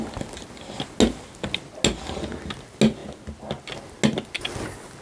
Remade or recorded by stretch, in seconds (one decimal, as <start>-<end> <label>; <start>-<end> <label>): 0.0-5.0 recorded